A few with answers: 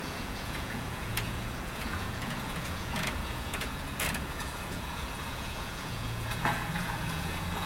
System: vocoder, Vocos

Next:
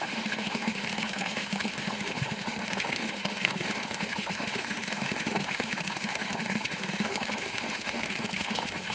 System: autoencoder, DAC-VAE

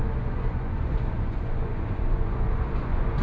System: vocoder, Vocos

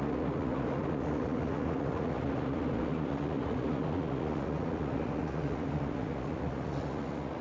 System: vocoder, Vocos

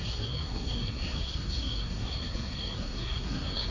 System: codec, SNAC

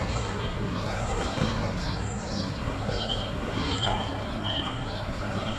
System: codec, SNAC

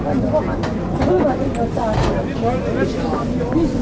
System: none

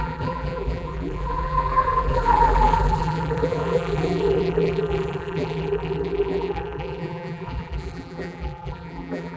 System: vocoder, BigVGAN v2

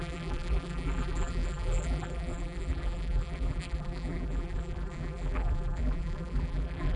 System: vocoder, BigVGAN v2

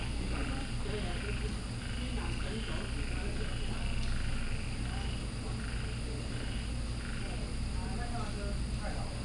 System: none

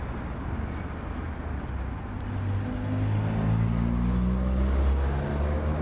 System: none